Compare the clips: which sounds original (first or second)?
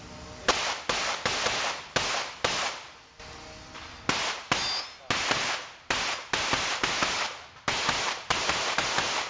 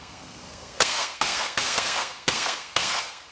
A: first